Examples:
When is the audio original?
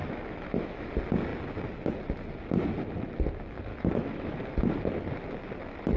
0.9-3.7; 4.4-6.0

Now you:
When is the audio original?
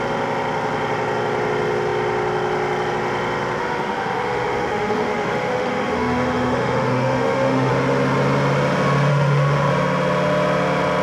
0.0-3.6; 7.7-9.1; 9.7-11.0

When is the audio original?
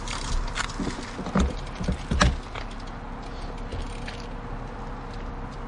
0.0-5.7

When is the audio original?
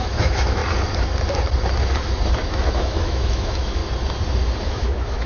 0.6-2.5; 3.8-4.6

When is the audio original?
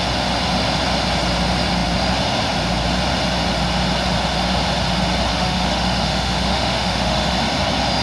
0.0-5.3; 7.3-8.0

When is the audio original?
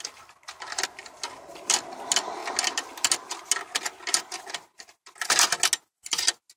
0.0-6.6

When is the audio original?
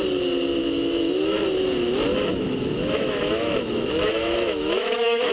0.0-0.6; 1.4-2.1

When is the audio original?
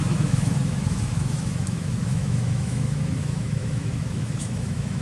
none